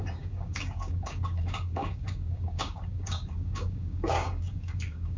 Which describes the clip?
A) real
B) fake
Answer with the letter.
B